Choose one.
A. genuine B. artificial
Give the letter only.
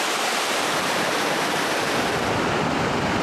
B